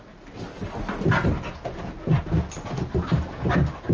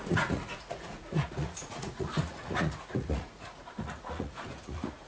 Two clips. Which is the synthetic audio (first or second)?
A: second